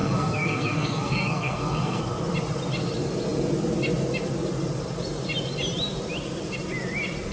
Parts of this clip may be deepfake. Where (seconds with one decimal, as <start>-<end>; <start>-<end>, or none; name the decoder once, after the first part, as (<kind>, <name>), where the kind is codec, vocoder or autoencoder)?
0.0-2.0 (codec, SNAC)